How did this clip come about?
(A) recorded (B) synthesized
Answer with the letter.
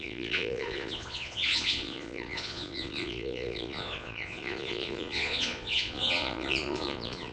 B